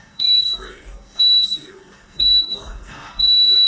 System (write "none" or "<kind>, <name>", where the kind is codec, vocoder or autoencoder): codec, SNAC